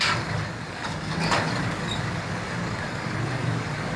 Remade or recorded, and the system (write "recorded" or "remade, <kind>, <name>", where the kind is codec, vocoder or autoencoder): remade, codec, DAC